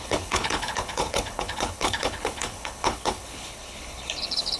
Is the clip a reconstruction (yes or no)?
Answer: yes